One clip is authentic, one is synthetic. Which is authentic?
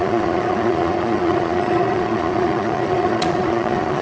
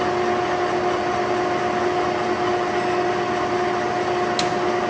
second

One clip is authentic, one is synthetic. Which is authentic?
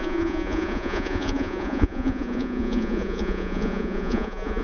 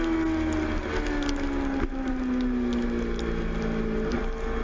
second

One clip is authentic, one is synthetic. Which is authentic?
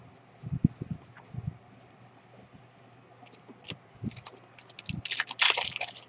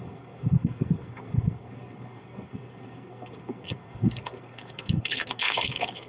first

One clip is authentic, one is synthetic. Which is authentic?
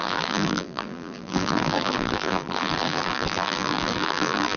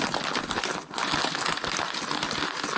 second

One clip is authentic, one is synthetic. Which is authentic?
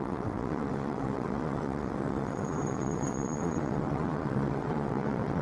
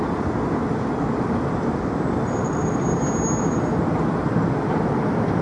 second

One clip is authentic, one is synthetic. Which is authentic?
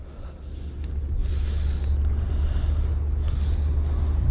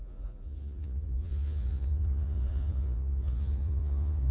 first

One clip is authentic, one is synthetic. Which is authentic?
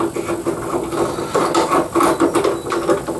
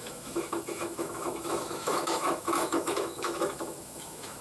first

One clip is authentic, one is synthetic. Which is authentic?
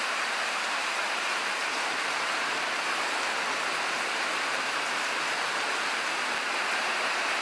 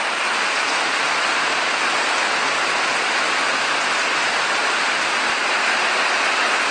second